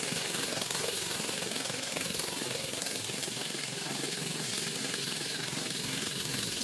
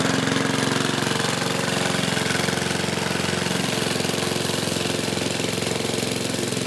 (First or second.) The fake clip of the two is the first